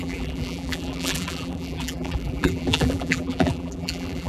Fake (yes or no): yes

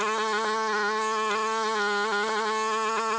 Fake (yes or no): no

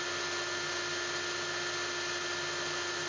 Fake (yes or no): no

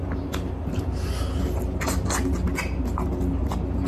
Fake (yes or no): no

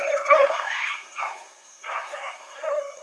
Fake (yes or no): yes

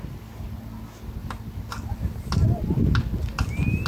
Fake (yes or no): no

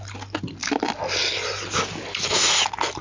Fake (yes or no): no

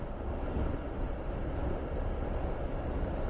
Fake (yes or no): no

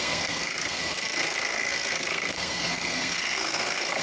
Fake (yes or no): yes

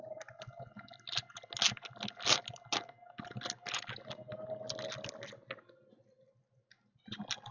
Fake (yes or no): no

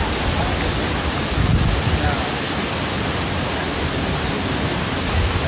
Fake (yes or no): no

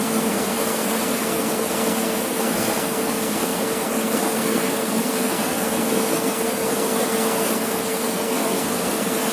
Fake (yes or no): yes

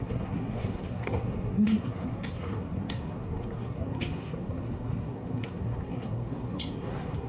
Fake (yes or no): yes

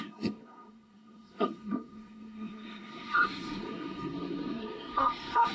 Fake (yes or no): yes